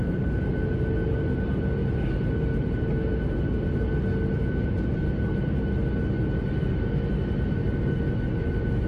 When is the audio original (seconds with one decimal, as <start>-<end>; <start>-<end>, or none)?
0.0-8.9